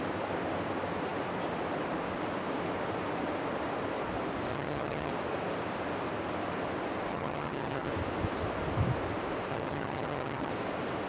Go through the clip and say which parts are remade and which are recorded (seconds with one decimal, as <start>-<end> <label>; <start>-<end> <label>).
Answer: 0.0-4.5 recorded; 4.5-5.1 remade; 5.1-7.1 recorded; 7.1-7.9 remade; 7.9-9.5 recorded; 9.5-10.5 remade; 10.5-11.1 recorded